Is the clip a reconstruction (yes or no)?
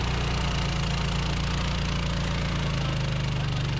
no